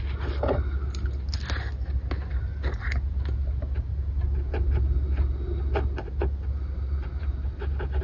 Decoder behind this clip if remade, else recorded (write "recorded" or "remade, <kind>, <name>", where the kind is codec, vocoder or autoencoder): recorded